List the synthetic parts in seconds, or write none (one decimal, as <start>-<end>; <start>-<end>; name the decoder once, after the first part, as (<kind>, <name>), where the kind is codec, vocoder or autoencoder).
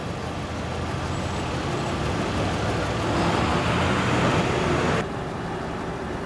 none